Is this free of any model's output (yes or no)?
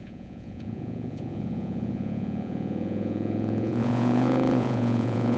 no